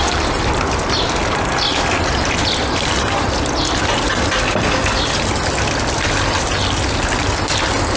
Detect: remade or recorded recorded